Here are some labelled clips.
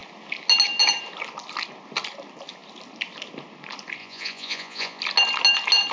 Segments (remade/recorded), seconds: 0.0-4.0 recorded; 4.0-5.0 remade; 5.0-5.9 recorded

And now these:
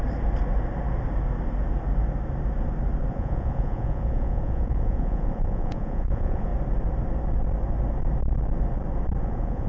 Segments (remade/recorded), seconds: 0.0-3.1 recorded; 3.1-6.5 remade; 6.5-9.2 recorded; 9.2-9.7 remade

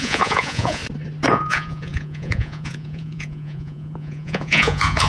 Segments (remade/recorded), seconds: 0.0-0.8 remade; 0.8-1.3 recorded; 1.3-5.1 remade

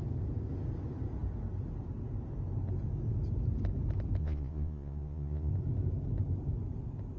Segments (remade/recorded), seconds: 0.0-4.2 recorded; 4.2-5.5 remade; 5.5-7.2 recorded

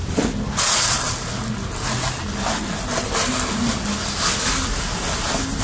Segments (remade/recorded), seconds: 0.0-5.6 recorded